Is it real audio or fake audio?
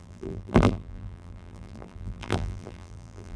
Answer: fake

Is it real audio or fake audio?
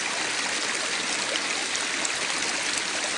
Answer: real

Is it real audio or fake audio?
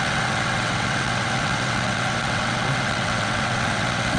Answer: fake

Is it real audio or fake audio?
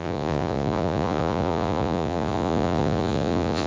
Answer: fake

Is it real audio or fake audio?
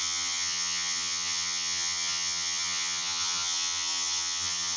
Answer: fake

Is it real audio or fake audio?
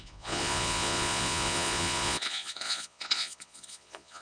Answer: fake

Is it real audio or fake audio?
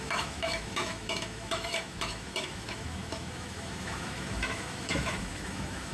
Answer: fake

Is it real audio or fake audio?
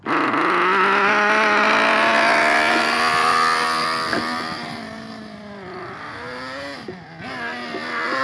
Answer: real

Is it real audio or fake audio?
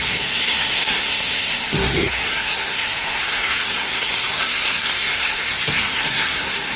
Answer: fake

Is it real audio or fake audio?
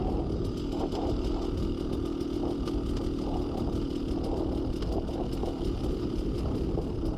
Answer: real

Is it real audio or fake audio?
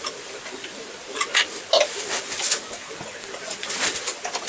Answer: real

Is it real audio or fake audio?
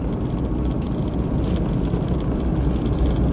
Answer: real